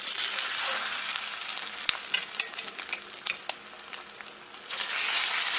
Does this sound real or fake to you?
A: real